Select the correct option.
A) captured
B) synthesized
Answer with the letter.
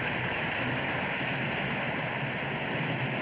A